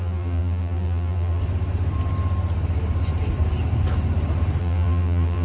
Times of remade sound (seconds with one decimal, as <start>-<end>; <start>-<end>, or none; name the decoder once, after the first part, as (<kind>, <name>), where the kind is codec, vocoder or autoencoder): 0.0-1.4 (vocoder, BigVGAN v2); 4.6-5.4